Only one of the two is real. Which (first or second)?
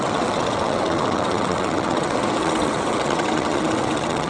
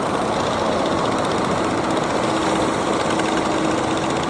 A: second